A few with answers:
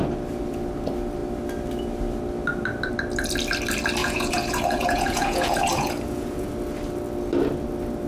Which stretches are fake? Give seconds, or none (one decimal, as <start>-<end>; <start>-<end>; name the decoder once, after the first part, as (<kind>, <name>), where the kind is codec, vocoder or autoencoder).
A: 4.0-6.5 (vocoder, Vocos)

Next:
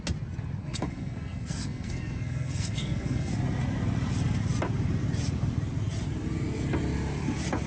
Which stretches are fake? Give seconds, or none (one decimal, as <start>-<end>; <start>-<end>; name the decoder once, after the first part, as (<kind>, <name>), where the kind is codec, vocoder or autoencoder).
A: 0.6-3.3 (codec, SNAC)

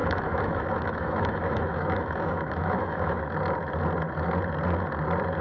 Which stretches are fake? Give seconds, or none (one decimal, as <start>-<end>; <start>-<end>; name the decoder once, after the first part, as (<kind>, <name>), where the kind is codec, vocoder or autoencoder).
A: 0.0-3.2 (autoencoder, DAC-VAE)

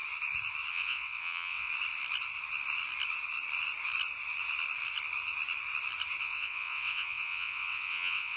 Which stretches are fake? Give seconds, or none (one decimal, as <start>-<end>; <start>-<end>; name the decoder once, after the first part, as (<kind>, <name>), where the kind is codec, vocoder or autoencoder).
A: 0.7-1.7 (vocoder, WaveNeXt); 6.2-8.4

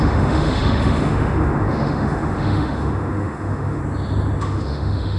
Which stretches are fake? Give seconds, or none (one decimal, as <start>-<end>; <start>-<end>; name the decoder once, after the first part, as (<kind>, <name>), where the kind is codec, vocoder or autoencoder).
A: 0.0-3.8 (autoencoder, DAC-VAE); 4.4-5.2

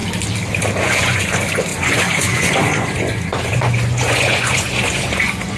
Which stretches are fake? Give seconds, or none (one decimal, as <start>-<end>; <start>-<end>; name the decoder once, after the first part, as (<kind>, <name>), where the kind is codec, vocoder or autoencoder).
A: 0.8-5.6 (vocoder, Vocos)